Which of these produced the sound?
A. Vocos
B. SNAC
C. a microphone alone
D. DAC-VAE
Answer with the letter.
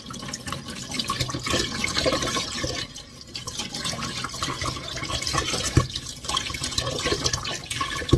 C